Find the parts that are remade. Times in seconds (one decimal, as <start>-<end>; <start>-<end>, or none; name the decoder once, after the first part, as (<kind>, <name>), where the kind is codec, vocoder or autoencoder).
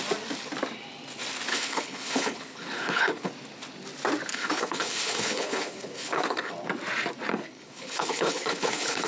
1.5-3.3 (codec, HILCodec); 4.3-6.5; 7.3-9.1